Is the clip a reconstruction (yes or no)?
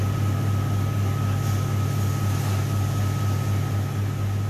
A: no